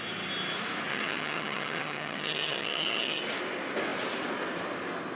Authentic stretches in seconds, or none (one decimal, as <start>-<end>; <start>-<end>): 0.0-0.9; 3.2-5.1